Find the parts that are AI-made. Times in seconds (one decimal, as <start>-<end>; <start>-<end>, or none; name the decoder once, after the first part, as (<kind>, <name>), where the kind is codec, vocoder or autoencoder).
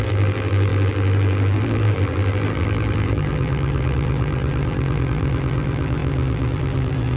0.0-7.2 (vocoder, BigVGAN v2)